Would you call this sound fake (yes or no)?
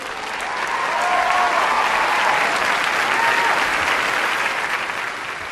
no